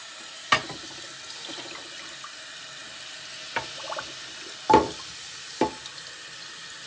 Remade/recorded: recorded